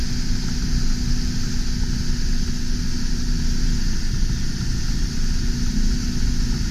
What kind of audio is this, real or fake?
real